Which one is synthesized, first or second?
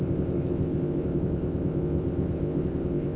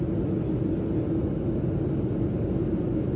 first